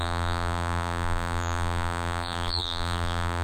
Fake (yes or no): yes